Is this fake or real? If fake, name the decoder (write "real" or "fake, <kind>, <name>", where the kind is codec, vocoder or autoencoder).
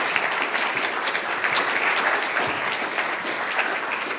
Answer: real